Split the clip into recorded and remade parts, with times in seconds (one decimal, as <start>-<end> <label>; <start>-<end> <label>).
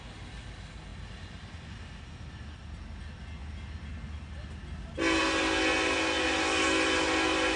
0.0-7.6 recorded